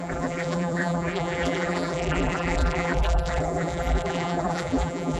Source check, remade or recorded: remade